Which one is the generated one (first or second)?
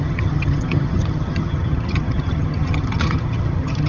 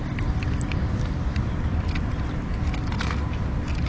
first